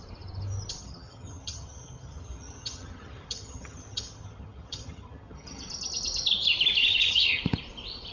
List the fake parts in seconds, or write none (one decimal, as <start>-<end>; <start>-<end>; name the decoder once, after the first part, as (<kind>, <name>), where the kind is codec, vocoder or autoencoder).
0.8-5.7 (vocoder, HiFi-GAN); 6.8-7.4